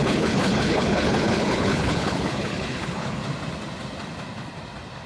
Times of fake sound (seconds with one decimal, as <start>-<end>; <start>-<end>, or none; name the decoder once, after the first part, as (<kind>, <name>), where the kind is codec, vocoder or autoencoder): 0.0-3.2 (codec, HILCodec)